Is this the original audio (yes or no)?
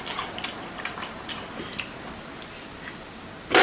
yes